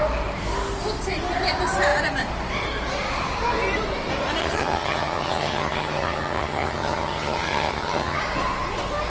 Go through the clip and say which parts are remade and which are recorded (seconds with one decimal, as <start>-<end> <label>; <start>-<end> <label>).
0.0-4.4 recorded; 4.4-8.2 remade; 8.2-9.1 recorded